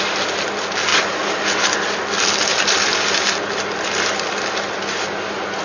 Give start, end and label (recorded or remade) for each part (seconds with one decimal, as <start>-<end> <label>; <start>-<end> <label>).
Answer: 0.0-5.6 recorded